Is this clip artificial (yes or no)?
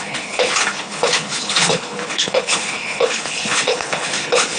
yes